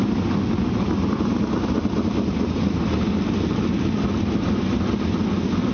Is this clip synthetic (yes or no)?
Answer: no